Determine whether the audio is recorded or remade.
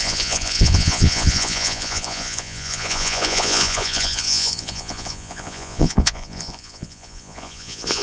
remade